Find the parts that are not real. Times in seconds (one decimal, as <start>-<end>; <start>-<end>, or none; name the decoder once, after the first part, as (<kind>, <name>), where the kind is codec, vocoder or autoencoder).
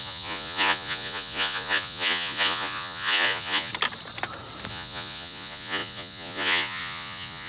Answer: 0.0-3.7 (vocoder, Vocos); 4.7-7.5